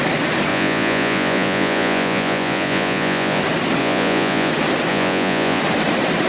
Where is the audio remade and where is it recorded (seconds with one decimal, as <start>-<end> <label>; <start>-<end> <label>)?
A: 0.0-0.5 recorded; 0.5-3.4 remade; 3.4-3.8 recorded; 3.8-4.5 remade; 4.5-4.9 recorded; 4.9-5.6 remade; 5.6-6.3 recorded